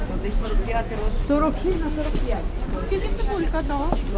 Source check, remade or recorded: recorded